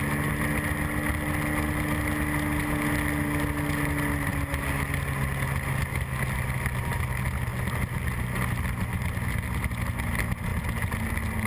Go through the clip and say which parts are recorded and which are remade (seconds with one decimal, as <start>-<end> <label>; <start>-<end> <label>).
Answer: 0.0-11.5 recorded